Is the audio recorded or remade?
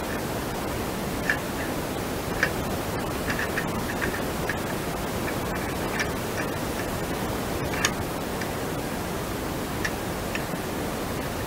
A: recorded